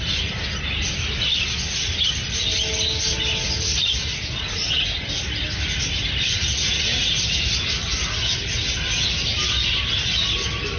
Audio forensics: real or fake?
real